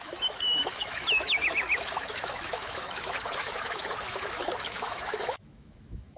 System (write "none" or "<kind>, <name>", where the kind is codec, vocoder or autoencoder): autoencoder, DAC-VAE